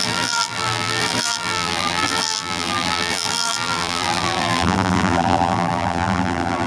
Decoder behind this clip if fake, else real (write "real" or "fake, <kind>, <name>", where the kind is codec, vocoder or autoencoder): fake, vocoder, BigVGAN v2